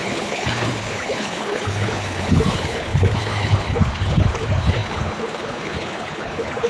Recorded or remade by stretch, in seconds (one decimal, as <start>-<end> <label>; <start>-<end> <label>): 0.0-6.7 remade